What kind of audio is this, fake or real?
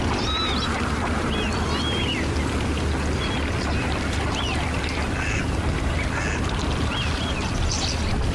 real